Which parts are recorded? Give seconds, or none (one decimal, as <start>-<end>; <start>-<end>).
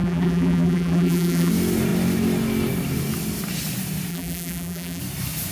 1.5-4.1; 5.0-5.5